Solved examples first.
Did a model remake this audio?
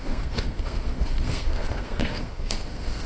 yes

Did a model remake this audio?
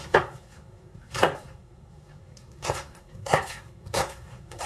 yes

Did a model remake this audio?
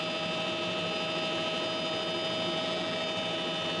no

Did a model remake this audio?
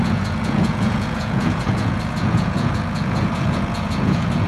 yes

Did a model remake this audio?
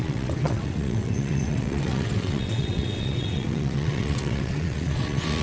yes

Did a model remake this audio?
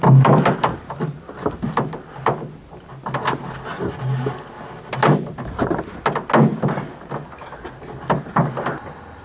no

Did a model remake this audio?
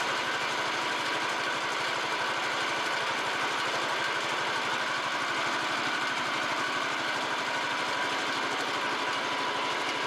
no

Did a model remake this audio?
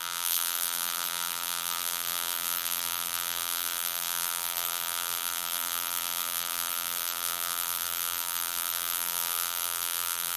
yes